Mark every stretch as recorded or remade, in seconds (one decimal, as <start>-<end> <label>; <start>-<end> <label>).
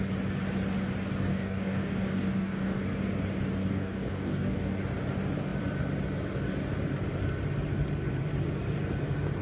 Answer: 0.0-1.3 recorded; 1.3-2.8 remade; 2.8-3.6 recorded; 3.6-4.8 remade; 4.8-9.4 recorded